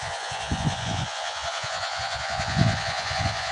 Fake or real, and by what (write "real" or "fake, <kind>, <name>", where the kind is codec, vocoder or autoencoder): fake, vocoder, Vocos